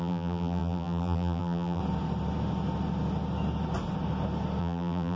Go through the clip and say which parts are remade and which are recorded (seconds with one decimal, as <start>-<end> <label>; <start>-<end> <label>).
0.0-1.8 remade; 1.8-4.6 recorded; 4.6-5.2 remade